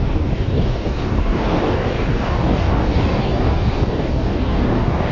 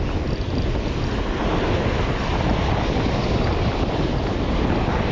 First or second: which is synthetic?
first